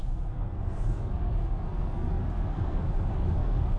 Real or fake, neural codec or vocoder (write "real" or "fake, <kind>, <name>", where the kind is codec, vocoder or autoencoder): fake, codec, SNAC